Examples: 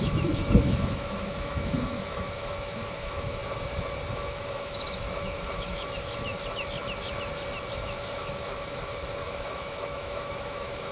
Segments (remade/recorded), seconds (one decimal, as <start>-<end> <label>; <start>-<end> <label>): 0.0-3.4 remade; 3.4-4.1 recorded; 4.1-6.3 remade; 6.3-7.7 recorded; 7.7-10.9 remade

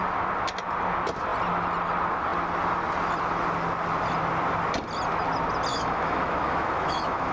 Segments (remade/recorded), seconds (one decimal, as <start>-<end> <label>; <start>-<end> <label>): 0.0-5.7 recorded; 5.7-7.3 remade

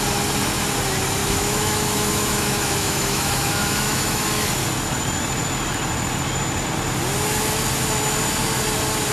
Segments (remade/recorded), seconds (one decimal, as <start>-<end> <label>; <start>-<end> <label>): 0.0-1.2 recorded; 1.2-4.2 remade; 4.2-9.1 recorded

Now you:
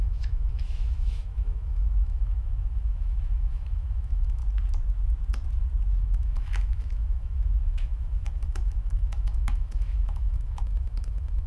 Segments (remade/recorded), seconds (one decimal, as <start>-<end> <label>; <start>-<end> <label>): 0.0-4.4 remade; 4.4-6.0 recorded; 6.0-11.5 remade

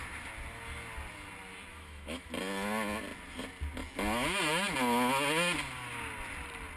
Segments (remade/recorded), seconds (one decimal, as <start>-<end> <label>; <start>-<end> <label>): 0.0-1.7 recorded; 1.7-2.3 remade; 2.3-6.8 recorded

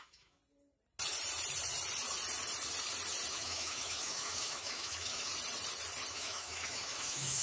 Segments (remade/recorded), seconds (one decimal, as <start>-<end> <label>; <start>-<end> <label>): 0.0-0.4 remade; 0.4-3.3 recorded; 3.3-5.3 remade; 5.3-6.1 recorded; 6.1-7.4 remade

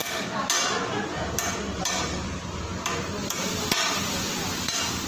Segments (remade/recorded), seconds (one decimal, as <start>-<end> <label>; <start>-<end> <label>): 0.0-5.1 recorded

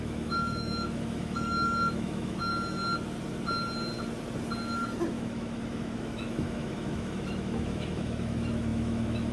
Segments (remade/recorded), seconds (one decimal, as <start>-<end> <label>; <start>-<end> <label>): 0.0-2.5 remade; 2.5-5.2 recorded; 5.2-9.3 remade